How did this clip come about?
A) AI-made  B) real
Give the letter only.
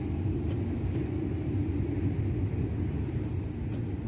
B